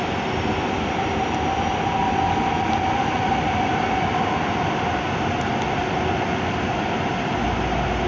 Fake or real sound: real